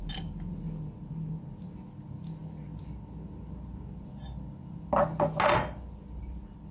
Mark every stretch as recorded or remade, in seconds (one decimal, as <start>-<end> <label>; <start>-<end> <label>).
0.0-6.7 recorded